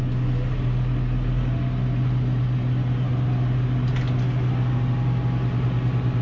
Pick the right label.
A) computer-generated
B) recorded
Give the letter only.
B